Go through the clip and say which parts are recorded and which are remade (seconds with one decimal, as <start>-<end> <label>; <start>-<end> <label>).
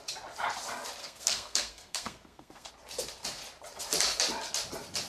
0.0-1.0 recorded; 1.0-2.7 remade; 2.7-5.1 recorded